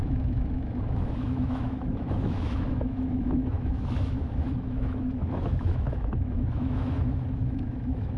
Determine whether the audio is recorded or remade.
remade